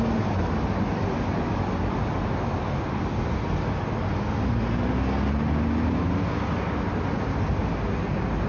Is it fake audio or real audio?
real